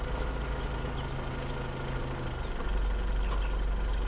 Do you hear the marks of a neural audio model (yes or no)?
no